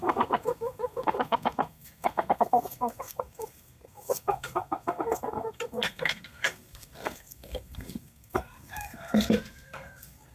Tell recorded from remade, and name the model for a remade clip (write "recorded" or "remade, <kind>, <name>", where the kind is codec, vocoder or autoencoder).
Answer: remade, codec, SNAC